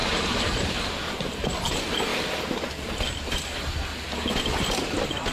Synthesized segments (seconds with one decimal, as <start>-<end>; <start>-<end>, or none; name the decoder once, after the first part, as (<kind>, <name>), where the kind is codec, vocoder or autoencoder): 0.0-1.4 (vocoder, BigVGAN v2)